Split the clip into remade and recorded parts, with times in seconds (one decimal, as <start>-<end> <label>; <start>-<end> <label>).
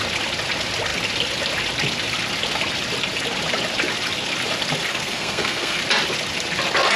0.0-4.9 recorded; 4.9-5.8 remade; 5.8-7.0 recorded